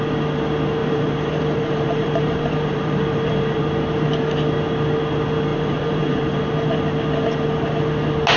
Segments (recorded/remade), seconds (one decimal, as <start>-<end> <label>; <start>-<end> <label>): 0.0-0.8 recorded; 0.8-3.6 remade; 3.6-5.5 recorded; 5.5-6.4 remade; 6.4-8.4 recorded